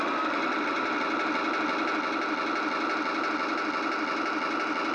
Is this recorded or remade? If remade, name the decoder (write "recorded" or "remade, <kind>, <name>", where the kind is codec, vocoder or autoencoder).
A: recorded